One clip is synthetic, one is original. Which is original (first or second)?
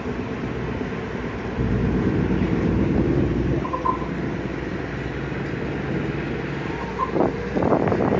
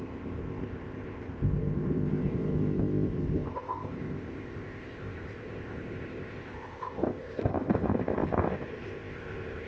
first